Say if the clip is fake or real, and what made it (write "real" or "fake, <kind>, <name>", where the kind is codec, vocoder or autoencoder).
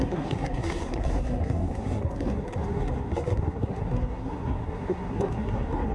fake, codec, SNAC